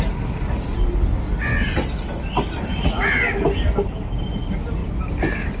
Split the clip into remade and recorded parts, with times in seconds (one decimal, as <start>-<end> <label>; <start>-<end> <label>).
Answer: 0.0-5.6 recorded